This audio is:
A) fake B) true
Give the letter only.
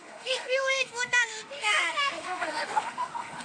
A